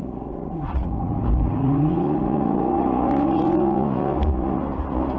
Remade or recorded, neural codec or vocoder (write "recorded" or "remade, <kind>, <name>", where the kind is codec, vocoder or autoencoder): remade, vocoder, Vocos